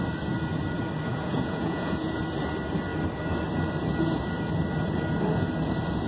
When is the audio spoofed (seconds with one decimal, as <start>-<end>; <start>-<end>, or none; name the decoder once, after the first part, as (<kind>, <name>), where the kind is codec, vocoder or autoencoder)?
1.1-2.2 (vocoder, Vocos)